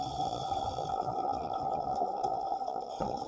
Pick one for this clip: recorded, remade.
remade